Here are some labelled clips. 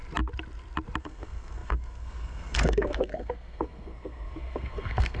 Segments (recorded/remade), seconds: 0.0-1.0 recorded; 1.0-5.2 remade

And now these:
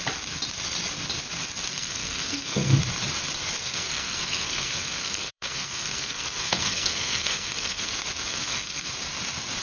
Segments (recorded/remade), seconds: 0.0-1.7 recorded; 1.7-2.8 remade; 2.8-3.6 recorded; 3.6-7.9 remade; 7.9-8.3 recorded; 8.3-8.9 remade; 8.9-9.6 recorded

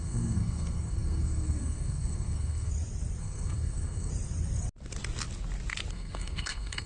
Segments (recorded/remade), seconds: 0.0-2.7 remade; 2.7-3.2 recorded; 3.2-4.1 remade; 4.1-5.9 recorded; 5.9-6.9 remade

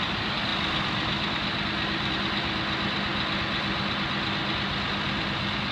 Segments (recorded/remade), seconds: 0.0-5.7 recorded

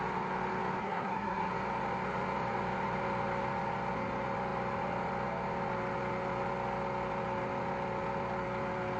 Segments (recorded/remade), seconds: 0.0-0.8 recorded; 0.8-1.5 remade; 1.5-9.0 recorded

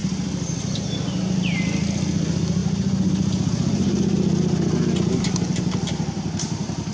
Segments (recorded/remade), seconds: 0.0-6.9 recorded